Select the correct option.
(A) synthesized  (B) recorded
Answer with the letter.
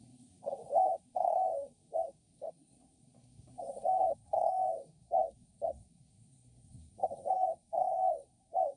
A